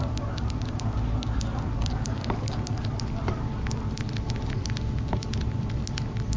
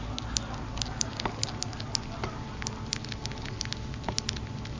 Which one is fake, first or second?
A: first